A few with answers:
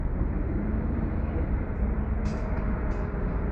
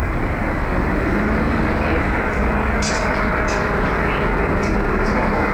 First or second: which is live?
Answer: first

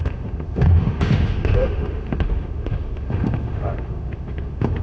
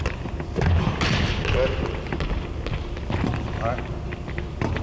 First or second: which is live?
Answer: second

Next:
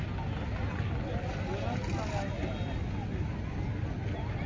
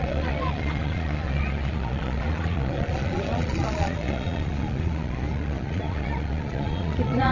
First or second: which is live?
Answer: first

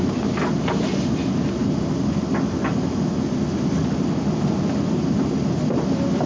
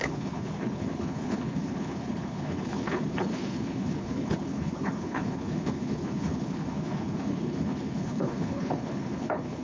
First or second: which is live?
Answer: first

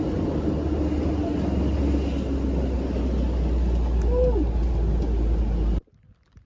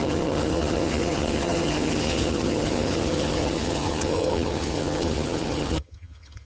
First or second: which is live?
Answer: first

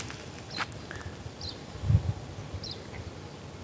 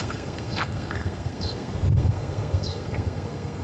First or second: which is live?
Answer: first